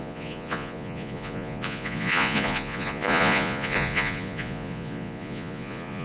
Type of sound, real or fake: fake